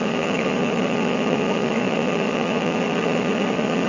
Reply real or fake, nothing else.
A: fake